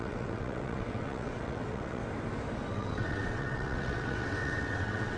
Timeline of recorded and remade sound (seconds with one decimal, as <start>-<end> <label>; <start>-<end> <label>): 0.0-2.0 remade; 2.0-2.7 recorded; 2.7-5.2 remade